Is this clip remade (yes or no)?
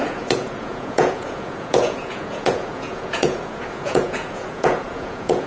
yes